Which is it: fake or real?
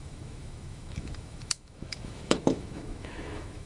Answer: fake